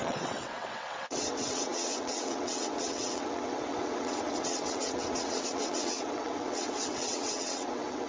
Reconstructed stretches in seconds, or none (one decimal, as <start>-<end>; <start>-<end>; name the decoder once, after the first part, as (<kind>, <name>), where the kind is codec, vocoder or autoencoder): 0.0-8.1 (vocoder, WaveNeXt)